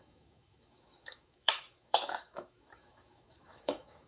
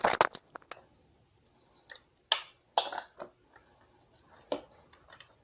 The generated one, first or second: first